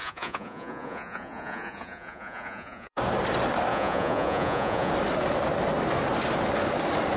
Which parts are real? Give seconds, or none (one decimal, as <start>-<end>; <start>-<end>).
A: 3.0-3.7; 4.9-7.2